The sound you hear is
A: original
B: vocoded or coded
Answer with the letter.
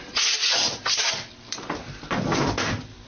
B